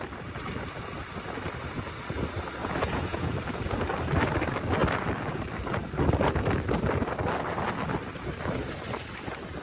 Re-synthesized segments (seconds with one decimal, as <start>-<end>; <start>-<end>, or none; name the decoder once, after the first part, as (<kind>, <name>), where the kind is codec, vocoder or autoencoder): 2.6-3.3 (vocoder, Vocos)